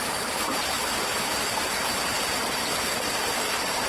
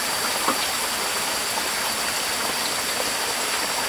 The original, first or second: second